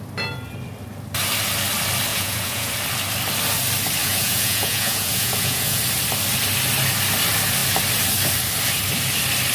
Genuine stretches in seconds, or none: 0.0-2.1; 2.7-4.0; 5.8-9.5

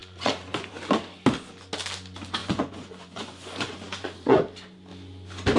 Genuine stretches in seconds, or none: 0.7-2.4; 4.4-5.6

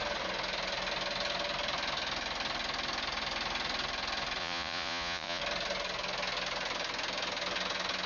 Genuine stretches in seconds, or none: 0.0-4.4; 5.4-8.1

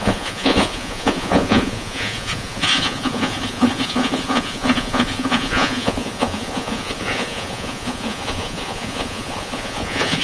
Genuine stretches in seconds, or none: none